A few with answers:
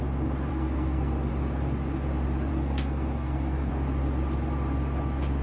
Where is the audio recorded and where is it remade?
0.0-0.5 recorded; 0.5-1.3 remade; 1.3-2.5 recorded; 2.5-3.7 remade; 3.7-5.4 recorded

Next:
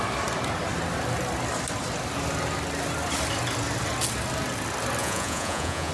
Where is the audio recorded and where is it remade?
0.0-5.0 recorded; 5.0-5.9 remade